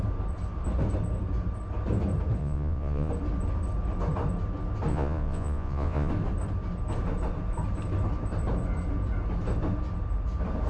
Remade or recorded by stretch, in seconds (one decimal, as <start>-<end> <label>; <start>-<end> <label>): 0.0-2.4 recorded; 2.4-3.1 remade; 3.1-4.9 recorded; 4.9-6.1 remade; 6.1-10.7 recorded